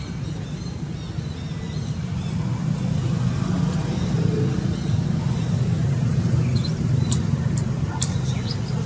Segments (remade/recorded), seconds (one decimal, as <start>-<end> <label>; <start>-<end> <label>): 0.0-6.5 recorded; 6.5-7.5 remade; 7.5-8.9 recorded